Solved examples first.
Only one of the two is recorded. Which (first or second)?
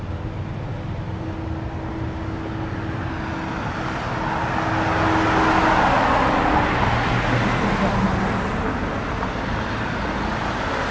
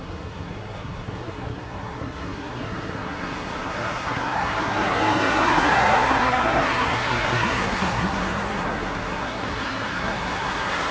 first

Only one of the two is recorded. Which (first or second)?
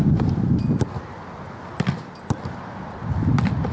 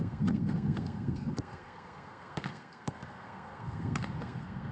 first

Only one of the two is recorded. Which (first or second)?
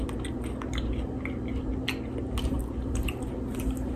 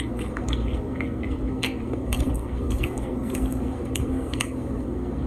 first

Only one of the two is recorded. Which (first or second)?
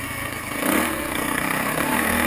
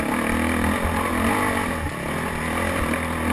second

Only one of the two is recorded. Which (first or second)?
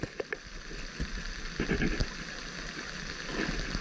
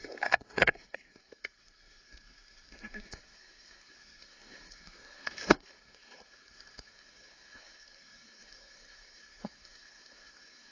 first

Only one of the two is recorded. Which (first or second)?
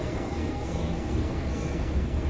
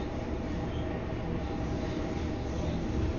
second